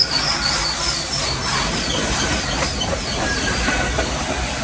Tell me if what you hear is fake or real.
real